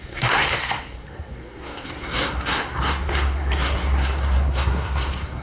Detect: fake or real fake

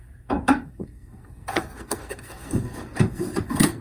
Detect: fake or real fake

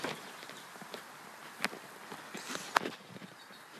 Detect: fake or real real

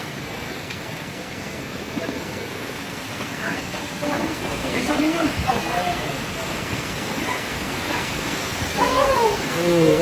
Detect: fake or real fake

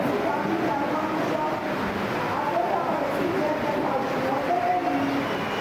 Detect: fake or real real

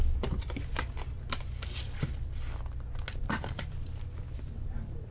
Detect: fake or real real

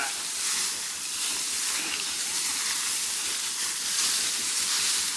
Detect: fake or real real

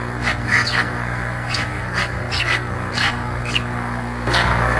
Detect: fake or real fake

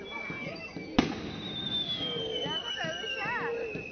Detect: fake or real real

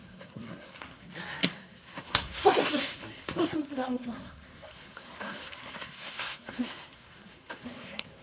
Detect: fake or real fake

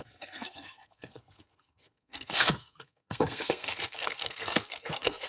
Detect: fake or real fake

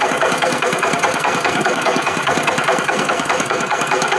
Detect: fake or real fake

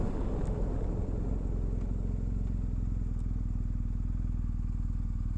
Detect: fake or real real